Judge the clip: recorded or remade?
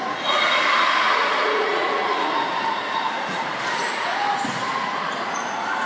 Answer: remade